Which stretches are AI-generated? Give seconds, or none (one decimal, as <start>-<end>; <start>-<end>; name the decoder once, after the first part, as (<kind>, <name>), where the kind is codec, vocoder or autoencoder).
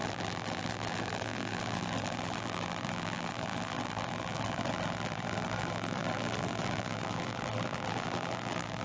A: 0.0-8.8 (vocoder, BigVGAN v2)